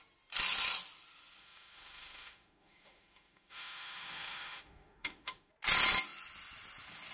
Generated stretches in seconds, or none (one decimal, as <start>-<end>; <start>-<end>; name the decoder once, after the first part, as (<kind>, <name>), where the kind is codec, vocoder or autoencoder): 1.4-5.5 (autoencoder, DAC-VAE)